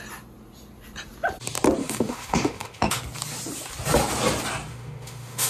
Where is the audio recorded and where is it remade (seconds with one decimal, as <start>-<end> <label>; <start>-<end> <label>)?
0.0-1.8 recorded; 1.8-3.0 remade; 3.0-4.7 recorded; 4.7-5.5 remade